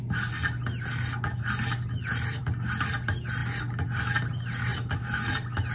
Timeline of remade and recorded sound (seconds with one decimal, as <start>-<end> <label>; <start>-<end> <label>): 0.0-5.7 recorded